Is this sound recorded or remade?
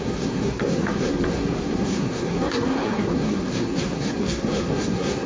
remade